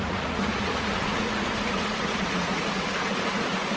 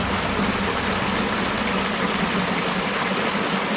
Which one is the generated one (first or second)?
first